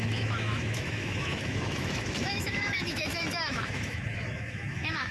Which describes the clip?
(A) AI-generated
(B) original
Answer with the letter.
A